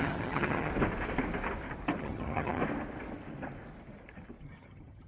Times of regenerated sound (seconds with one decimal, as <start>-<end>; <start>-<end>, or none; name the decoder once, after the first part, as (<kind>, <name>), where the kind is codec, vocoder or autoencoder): 0.0-0.7 (vocoder, HiFi-GAN); 2.0-2.6; 4.4-5.1

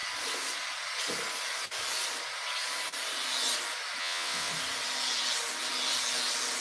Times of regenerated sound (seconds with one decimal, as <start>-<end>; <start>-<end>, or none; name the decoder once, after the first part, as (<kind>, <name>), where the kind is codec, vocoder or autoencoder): 4.0-4.5 (vocoder, WaveNeXt)

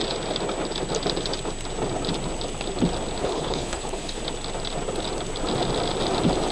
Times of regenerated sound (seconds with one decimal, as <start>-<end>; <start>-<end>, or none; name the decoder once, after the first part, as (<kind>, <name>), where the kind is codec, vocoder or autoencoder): 3.2-4.2 (codec, HILCodec)

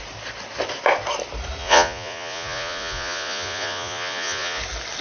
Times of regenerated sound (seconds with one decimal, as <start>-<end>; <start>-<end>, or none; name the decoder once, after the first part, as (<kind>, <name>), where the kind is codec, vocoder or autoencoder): 1.6-4.6 (vocoder, Vocos)

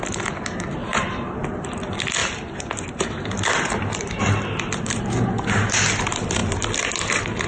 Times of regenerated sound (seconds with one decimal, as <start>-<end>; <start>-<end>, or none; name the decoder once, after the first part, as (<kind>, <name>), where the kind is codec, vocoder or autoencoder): none

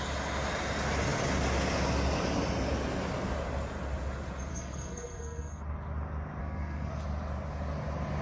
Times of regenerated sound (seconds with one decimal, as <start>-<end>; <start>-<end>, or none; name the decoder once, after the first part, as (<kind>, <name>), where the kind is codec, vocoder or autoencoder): 4.5-5.6 (codec, SNAC); 6.4-6.9

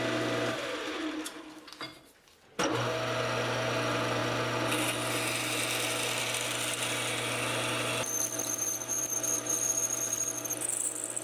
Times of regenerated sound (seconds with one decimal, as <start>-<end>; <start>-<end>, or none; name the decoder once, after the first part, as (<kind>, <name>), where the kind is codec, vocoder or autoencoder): none

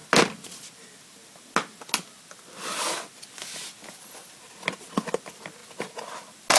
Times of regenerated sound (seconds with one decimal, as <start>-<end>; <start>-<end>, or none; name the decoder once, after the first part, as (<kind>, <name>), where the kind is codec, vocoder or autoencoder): none